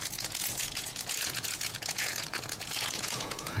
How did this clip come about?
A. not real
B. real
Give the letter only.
A